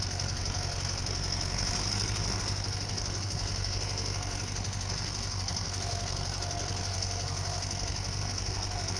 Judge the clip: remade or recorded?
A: remade